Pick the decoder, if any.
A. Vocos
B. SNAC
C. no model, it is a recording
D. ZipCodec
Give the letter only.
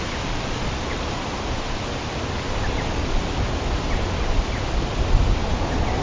C